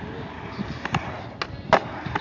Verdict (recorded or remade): recorded